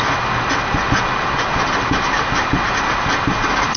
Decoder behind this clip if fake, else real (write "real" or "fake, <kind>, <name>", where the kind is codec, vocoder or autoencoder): real